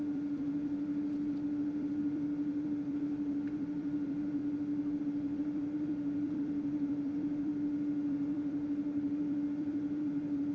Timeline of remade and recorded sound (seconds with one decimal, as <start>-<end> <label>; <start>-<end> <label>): 0.0-4.4 remade; 4.4-5.0 recorded; 5.0-7.5 remade; 7.5-8.1 recorded; 8.1-10.5 remade